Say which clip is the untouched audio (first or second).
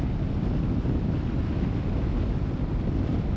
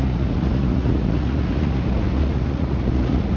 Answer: first